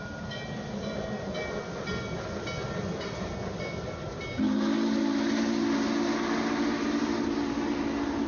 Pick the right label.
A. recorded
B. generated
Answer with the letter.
A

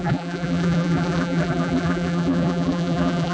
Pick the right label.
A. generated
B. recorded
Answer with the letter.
A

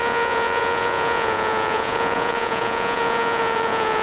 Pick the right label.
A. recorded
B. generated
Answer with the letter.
B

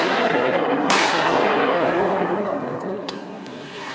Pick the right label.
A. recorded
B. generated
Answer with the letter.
B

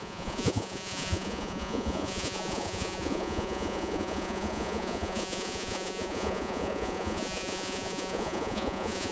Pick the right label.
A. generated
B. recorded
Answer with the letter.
A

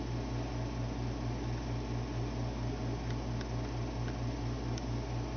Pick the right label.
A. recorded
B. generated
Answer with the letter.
A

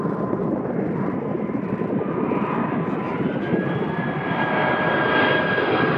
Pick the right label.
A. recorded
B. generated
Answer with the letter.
A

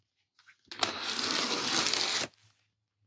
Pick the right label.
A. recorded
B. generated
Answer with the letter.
A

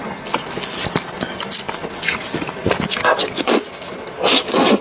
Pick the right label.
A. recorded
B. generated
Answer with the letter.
A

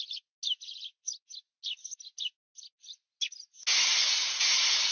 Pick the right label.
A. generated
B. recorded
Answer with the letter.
B